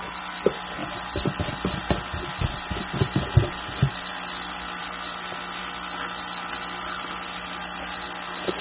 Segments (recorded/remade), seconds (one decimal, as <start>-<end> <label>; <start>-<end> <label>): 0.0-8.6 recorded